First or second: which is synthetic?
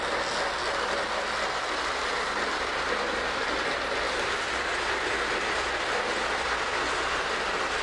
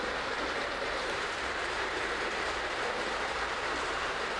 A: second